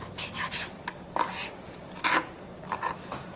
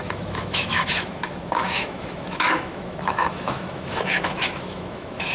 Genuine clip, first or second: first